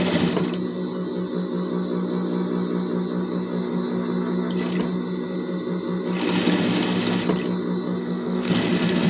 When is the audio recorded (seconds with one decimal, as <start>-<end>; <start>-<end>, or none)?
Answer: 0.0-8.0; 8.7-9.1